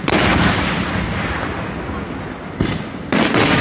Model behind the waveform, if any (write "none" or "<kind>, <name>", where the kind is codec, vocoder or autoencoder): none